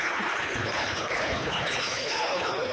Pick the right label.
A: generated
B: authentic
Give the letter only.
A